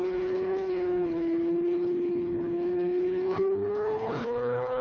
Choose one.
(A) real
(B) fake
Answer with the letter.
B